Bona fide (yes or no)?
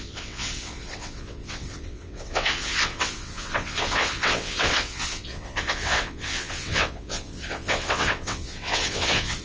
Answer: no